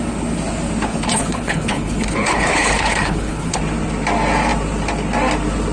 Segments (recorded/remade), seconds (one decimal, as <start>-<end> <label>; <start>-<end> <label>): 0.0-0.9 recorded; 0.9-3.6 remade; 3.6-5.7 recorded

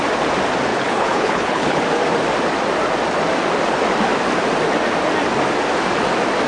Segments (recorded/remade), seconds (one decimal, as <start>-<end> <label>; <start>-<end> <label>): 0.0-0.7 recorded; 0.7-1.8 remade; 1.8-6.5 recorded

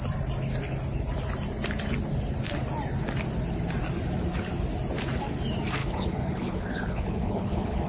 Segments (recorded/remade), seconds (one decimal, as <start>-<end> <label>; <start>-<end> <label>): 0.0-5.8 recorded; 5.8-7.9 remade

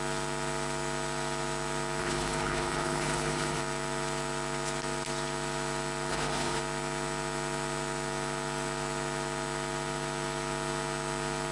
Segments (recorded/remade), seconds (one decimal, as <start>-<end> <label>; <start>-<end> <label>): 0.0-2.0 recorded; 2.0-3.6 remade; 3.6-6.1 recorded; 6.1-6.6 remade; 6.6-11.5 recorded

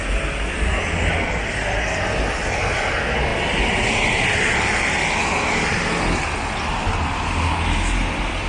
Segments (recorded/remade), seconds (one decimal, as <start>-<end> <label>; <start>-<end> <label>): 0.0-8.5 recorded

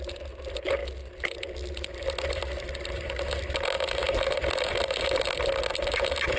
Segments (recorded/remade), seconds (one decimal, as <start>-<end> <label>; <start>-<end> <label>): 0.0-6.4 recorded

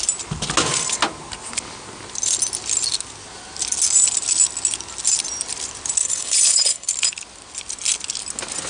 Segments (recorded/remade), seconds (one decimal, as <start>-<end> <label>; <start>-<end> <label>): 0.0-6.0 recorded; 6.0-6.9 remade; 6.9-8.7 recorded